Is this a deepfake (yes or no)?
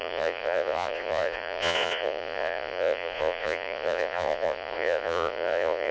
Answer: yes